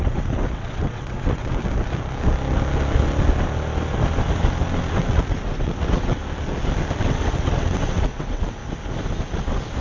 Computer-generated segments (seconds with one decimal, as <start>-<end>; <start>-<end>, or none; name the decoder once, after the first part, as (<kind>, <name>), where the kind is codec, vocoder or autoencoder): 0.0-1.6 (vocoder, WaveNeXt); 4.9-6.2; 7.0-8.6